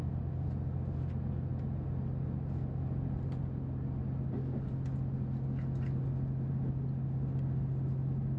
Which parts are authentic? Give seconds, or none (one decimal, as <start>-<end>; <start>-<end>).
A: 0.0-8.4